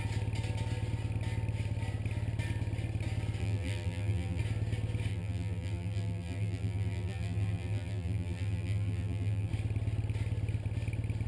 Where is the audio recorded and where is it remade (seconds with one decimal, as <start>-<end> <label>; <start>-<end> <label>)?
0.0-3.4 recorded; 3.4-4.4 remade; 4.4-5.1 recorded; 5.1-9.5 remade; 9.5-11.3 recorded